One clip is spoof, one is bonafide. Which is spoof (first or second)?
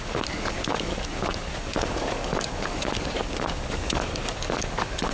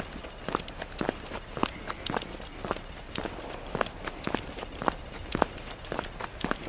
first